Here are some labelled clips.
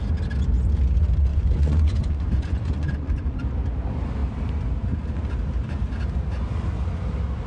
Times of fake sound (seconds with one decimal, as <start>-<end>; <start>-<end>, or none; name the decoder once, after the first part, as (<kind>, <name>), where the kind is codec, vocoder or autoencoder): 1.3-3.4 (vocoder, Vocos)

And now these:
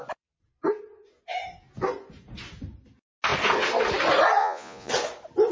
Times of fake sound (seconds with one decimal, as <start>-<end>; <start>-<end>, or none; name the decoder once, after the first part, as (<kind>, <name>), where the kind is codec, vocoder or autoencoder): 4.4-4.9 (vocoder, Vocos)

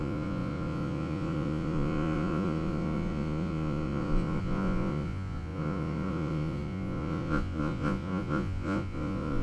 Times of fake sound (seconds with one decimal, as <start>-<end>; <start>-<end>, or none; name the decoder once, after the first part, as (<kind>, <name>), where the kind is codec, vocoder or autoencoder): 0.0-9.4 (vocoder, Vocos)

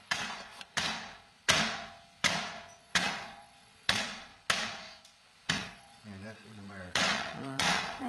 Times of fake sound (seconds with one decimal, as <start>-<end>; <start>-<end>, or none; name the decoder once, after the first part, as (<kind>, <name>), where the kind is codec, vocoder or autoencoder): 0.0-0.5 (vocoder, Vocos); 2.8-4.3; 5.5-8.1